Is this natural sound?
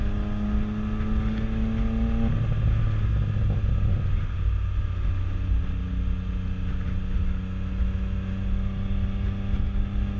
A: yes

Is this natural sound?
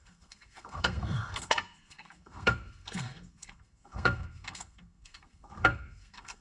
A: no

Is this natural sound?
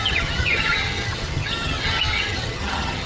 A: no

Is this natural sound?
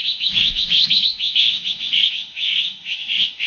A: no